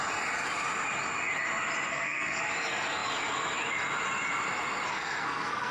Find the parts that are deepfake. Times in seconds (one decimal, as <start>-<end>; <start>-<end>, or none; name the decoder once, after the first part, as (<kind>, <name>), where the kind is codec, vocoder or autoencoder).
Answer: 1.9-2.4 (codec, SNAC); 4.9-5.7